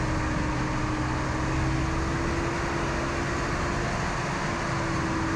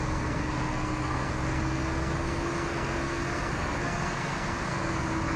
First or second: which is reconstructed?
second